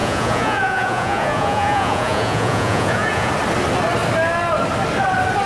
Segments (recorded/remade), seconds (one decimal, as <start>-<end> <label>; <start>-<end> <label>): 0.0-3.3 remade; 3.3-5.5 recorded